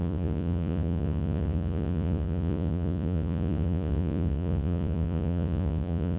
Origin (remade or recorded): remade